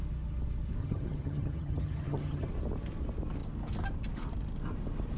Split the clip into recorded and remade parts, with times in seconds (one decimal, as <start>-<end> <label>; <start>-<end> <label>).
0.0-0.8 recorded; 0.8-2.5 remade; 2.5-5.2 recorded